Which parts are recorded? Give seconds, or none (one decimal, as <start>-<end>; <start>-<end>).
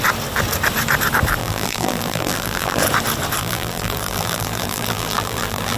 0.0-1.4; 2.8-3.4